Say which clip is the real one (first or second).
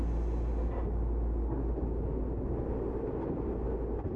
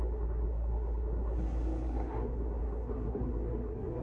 first